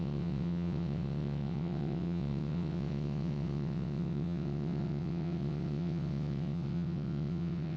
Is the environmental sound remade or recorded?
remade